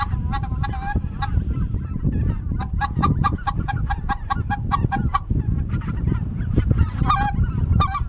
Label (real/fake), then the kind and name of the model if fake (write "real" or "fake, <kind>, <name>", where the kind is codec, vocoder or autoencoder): fake, vocoder, BigVGAN v2